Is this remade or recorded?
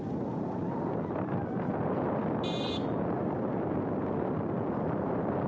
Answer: recorded